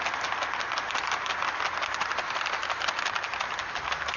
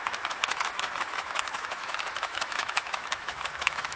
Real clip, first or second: first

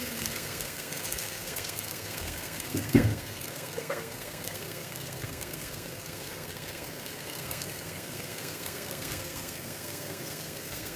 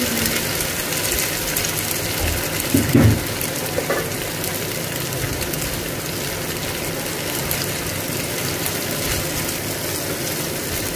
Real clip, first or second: second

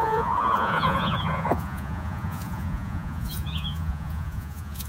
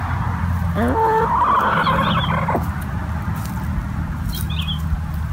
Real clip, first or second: second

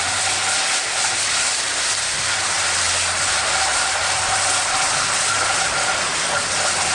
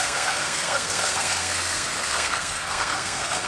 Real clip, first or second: first